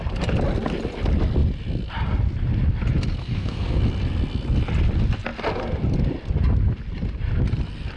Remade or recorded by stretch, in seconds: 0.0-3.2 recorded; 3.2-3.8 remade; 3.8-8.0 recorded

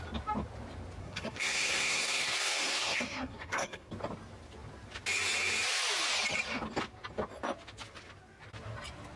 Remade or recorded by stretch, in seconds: 0.0-1.0 recorded; 1.0-3.9 remade; 3.9-9.2 recorded

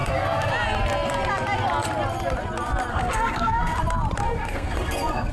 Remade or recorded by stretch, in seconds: 0.0-0.5 remade; 0.5-2.9 recorded; 2.9-3.8 remade; 3.8-4.2 recorded; 4.2-5.3 remade

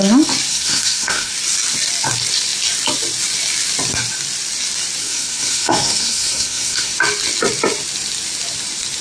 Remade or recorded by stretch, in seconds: 0.0-0.5 recorded; 0.5-1.3 remade; 1.3-5.0 recorded; 5.0-6.9 remade; 6.9-9.0 recorded

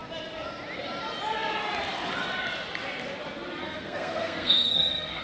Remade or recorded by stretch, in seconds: 0.0-3.6 recorded; 3.6-5.2 remade

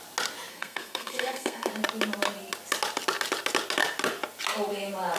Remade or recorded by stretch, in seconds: 0.0-0.5 recorded; 0.5-1.7 remade; 1.7-5.2 recorded